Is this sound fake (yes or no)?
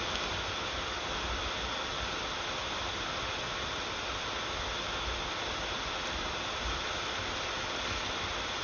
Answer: no